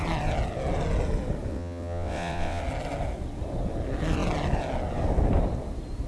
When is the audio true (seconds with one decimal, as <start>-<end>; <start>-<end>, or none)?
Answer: 0.0-1.5; 2.6-6.1